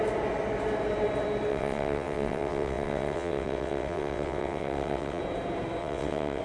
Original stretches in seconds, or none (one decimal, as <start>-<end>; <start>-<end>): 0.0-1.5; 5.2-5.8